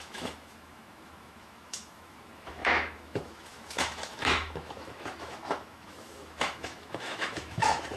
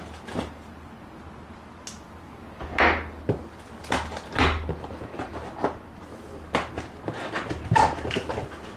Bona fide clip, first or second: second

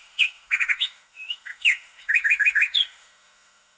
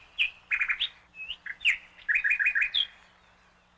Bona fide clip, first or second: second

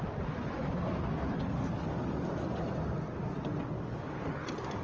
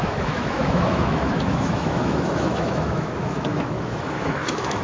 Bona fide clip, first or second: first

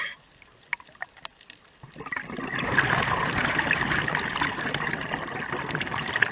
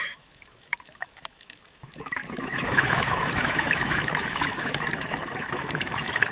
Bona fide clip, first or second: first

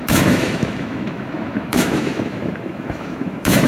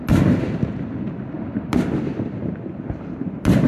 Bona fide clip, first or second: second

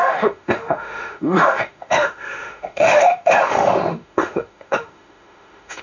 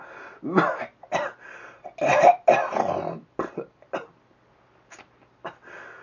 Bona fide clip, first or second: second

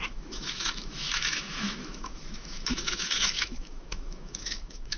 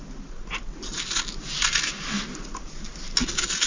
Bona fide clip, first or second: second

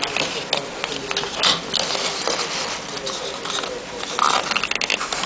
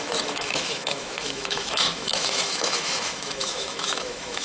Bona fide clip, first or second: first